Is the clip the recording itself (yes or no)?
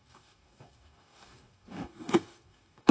no